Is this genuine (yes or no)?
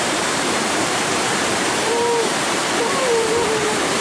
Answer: no